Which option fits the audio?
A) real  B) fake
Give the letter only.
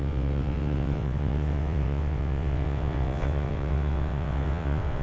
B